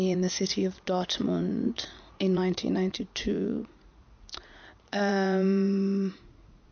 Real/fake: fake